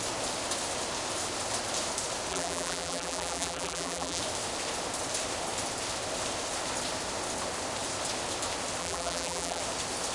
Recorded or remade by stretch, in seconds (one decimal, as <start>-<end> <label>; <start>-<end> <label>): 0.0-2.3 recorded; 2.3-4.2 remade; 4.2-8.8 recorded; 8.8-9.6 remade; 9.6-10.1 recorded